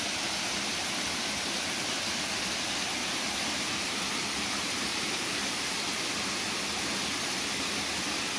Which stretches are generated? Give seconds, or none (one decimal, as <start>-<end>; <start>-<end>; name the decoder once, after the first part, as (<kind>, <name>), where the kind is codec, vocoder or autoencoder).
3.0-3.7 (vocoder, BigVGAN v2); 4.9-5.5